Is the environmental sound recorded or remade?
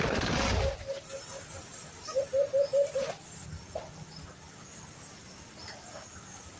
recorded